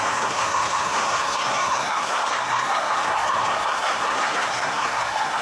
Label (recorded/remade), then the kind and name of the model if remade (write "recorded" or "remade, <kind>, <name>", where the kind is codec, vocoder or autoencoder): remade, codec, SNAC